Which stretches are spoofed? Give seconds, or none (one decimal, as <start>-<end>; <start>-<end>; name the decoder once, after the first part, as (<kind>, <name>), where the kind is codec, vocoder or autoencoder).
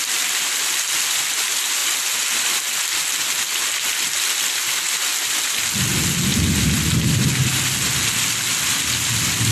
none